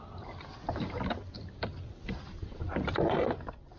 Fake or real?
fake